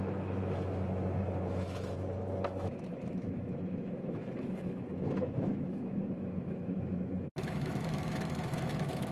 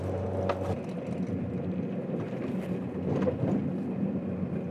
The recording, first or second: second